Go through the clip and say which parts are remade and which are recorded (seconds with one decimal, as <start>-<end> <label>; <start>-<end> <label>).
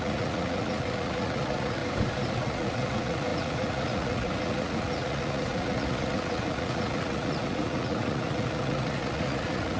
0.0-1.8 remade; 1.8-2.3 recorded; 2.3-9.8 remade